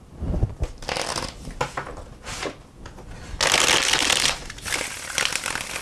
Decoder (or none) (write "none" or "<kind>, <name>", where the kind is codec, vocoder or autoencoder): none